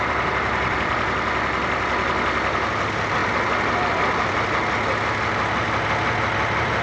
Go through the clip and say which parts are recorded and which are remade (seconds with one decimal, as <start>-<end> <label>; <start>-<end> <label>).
0.0-6.8 recorded